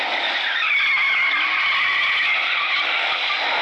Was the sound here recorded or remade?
recorded